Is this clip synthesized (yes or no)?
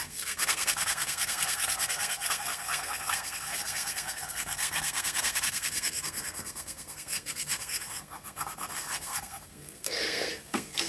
yes